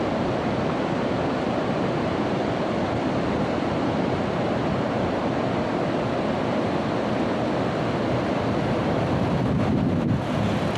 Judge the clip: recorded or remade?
recorded